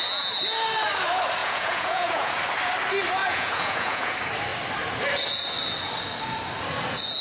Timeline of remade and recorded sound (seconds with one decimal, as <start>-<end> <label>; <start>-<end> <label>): 0.0-1.4 recorded; 1.4-2.4 remade; 2.4-3.2 recorded; 3.2-4.1 remade; 4.1-7.2 recorded